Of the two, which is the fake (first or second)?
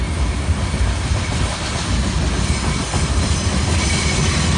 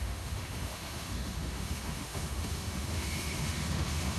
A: second